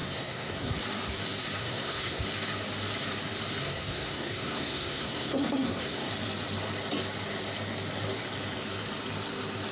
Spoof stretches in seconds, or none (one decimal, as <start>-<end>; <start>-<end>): 0.0-0.7; 1.6-2.2; 3.6-6.1